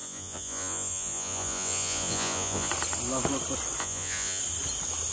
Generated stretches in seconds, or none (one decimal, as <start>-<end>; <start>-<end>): 0.0-2.7; 3.8-4.4